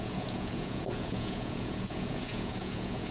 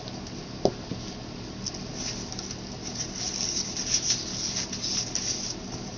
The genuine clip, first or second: second